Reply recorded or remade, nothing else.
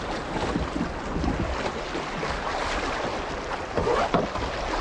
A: recorded